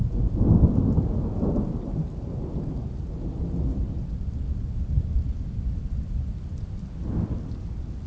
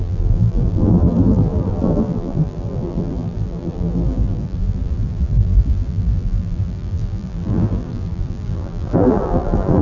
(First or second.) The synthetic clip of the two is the second